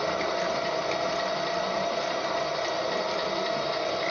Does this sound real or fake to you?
real